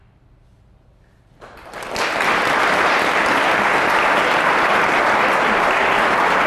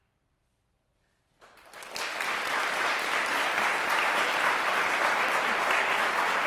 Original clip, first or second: first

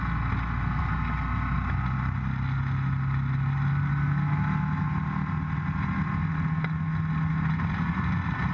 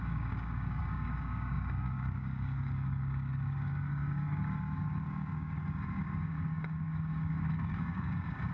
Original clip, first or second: first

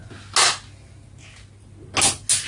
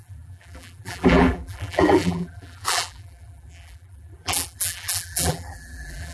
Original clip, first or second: first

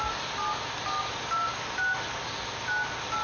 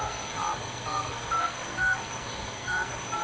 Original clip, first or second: first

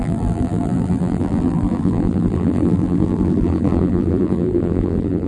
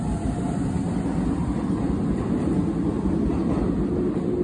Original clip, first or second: second